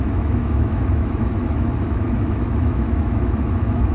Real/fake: fake